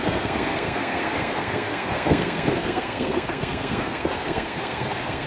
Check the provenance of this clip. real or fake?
fake